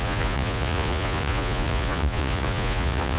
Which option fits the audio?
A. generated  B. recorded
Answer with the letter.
A